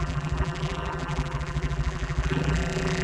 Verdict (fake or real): fake